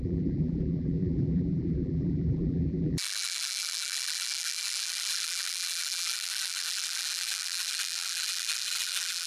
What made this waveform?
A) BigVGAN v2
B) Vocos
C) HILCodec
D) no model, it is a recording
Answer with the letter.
A